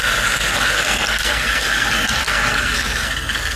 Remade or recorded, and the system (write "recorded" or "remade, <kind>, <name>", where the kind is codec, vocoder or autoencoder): remade, codec, SNAC